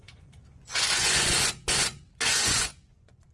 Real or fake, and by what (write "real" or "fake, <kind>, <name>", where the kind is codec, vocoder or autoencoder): fake, vocoder, Vocos